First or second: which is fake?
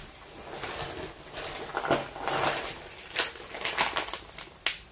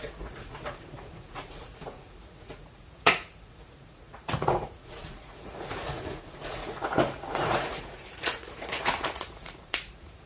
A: second